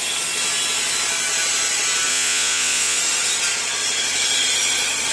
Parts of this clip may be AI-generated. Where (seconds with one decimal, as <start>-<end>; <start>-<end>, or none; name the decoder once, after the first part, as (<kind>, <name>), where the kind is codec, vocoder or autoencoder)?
2.1-3.0 (vocoder, Vocos)